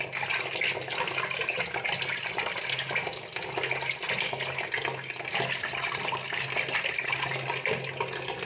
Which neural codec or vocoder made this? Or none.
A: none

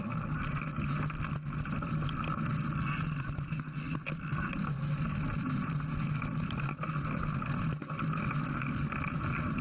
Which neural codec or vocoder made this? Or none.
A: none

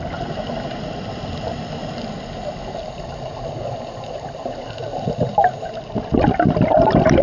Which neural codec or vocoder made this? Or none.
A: none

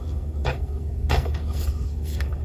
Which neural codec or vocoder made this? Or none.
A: codec, SNAC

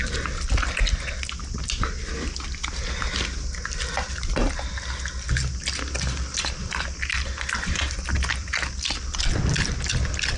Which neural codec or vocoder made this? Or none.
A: none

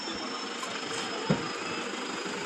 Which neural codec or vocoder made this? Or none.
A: none